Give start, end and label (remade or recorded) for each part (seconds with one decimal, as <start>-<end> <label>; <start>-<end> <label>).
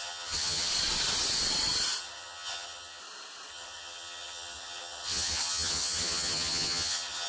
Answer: 0.0-0.7 remade; 0.7-2.0 recorded; 2.0-3.0 remade; 3.0-3.5 recorded; 3.5-7.3 remade